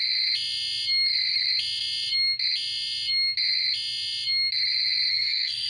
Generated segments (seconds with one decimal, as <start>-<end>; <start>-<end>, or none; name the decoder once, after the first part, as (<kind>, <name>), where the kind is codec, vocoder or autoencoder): 5.1-5.7 (codec, SNAC)